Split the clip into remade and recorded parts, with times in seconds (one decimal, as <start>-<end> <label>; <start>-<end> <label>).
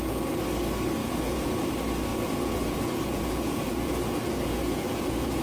0.0-1.0 recorded; 1.0-1.5 remade; 1.5-2.1 recorded; 2.1-5.4 remade